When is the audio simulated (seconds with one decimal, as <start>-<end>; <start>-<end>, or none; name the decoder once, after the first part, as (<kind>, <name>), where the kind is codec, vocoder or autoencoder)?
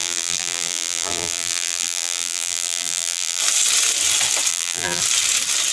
0.0-3.4 (vocoder, BigVGAN v2); 4.5-5.0